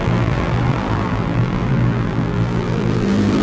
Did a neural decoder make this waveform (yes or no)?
yes